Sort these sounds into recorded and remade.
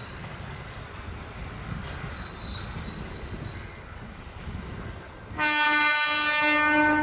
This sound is recorded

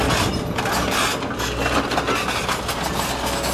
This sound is recorded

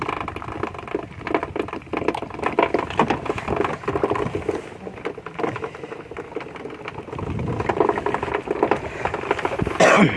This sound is recorded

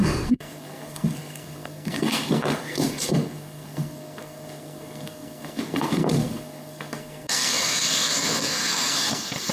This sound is remade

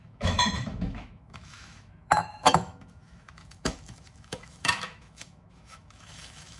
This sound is remade